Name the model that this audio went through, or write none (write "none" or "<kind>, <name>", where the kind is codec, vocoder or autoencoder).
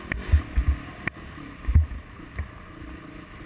none